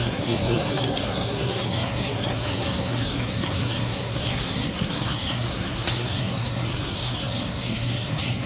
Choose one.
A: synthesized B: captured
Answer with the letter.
A